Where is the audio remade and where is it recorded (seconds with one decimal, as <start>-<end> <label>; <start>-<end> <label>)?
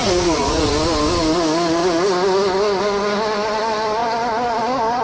0.0-0.7 remade; 0.7-5.0 recorded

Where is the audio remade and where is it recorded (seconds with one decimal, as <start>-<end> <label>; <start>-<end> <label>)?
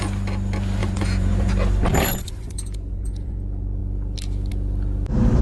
0.0-0.8 recorded; 0.8-1.5 remade; 1.5-2.1 recorded; 2.1-3.4 remade; 3.4-5.4 recorded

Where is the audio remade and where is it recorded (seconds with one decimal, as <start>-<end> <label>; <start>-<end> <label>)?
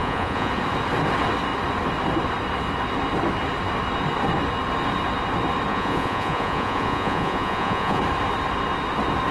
0.0-0.5 remade; 0.5-5.7 recorded; 5.7-8.0 remade; 8.0-9.3 recorded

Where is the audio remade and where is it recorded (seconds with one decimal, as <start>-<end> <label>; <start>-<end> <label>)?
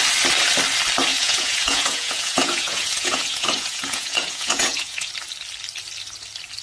0.0-1.1 recorded; 1.1-5.1 remade; 5.1-6.6 recorded